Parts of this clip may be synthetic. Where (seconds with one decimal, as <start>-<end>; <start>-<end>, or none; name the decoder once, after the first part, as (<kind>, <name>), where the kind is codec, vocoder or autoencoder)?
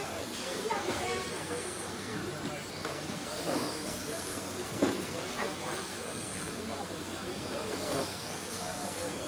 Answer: 0.0-2.2 (codec, SNAC); 2.7-9.3